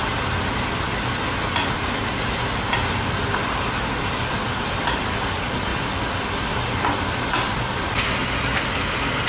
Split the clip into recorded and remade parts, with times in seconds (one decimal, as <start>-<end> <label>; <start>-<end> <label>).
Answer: 0.0-9.3 recorded